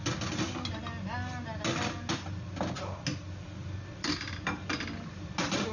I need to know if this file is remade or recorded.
recorded